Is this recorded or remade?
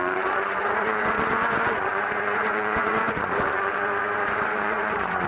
remade